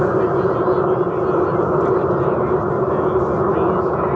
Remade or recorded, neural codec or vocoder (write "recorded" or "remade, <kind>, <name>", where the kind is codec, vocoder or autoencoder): recorded